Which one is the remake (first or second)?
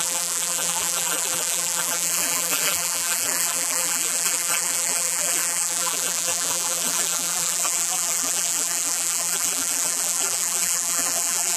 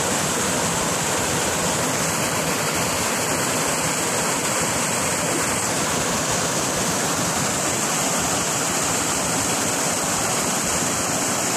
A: first